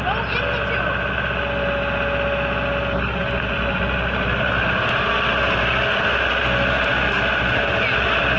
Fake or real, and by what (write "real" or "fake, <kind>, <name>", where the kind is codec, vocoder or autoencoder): real